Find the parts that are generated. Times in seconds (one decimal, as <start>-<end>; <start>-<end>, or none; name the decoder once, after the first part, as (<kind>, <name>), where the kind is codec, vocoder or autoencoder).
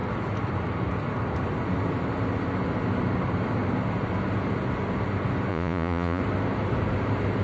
5.5-6.2 (vocoder, Vocos)